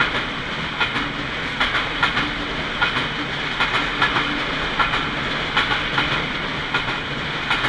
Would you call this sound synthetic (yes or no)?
no